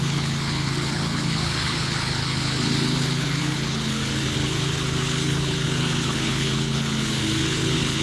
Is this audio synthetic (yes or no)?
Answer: yes